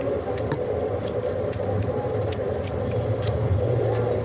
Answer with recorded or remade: recorded